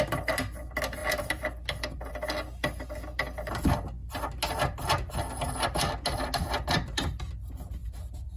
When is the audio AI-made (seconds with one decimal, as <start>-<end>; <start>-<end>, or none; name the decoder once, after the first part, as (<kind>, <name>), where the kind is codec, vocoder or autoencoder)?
1.0-2.1 (vocoder, BigVGAN v2); 4.0-5.1; 7.8-8.4